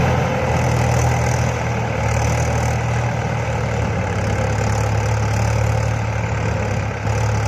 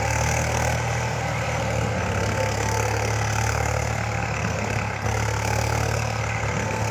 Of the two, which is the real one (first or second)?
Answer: first